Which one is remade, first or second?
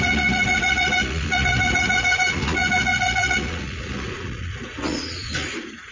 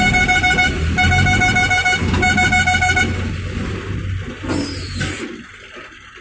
first